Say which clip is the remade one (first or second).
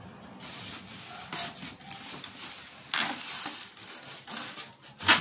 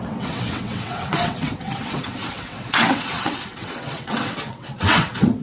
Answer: second